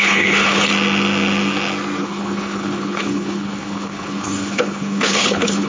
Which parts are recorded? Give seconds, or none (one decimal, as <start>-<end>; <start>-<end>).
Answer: 0.7-2.0